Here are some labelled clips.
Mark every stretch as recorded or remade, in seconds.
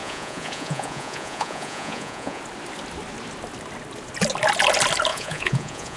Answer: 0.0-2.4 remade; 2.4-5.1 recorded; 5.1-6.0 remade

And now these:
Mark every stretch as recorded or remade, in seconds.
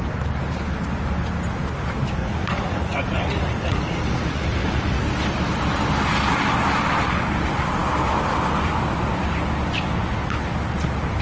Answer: 0.0-2.2 recorded; 2.2-4.9 remade; 4.9-11.2 recorded